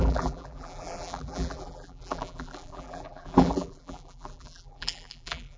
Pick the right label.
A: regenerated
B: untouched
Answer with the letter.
A